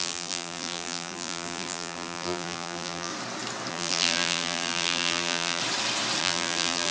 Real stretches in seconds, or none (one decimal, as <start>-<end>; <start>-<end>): 3.1-3.7; 5.6-6.2